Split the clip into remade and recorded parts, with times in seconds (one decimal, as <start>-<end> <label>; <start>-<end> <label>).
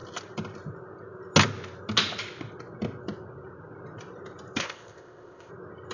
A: 0.0-4.6 recorded; 4.6-5.5 remade; 5.5-5.9 recorded